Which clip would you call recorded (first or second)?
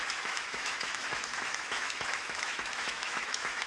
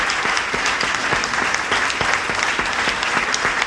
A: second